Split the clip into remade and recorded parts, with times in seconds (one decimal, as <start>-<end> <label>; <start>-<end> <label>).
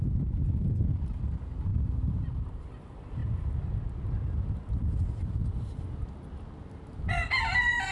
0.0-7.9 recorded